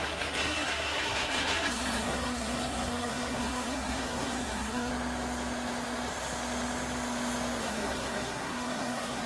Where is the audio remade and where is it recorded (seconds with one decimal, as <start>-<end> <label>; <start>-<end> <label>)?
0.0-4.9 remade; 4.9-7.6 recorded; 7.6-9.3 remade